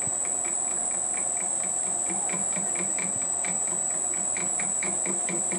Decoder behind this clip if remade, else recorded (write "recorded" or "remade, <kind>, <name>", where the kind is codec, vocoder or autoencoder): recorded